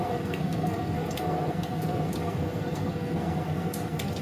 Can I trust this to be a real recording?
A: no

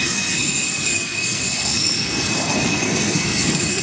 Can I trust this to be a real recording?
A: no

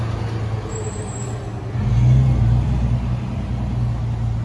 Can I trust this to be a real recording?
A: yes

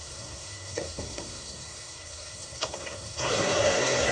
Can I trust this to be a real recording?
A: no